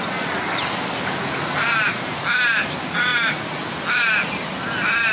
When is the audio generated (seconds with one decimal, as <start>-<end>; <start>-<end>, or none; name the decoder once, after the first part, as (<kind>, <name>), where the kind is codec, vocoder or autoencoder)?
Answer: none